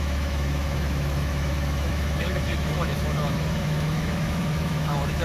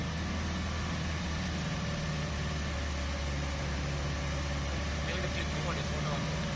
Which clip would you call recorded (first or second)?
second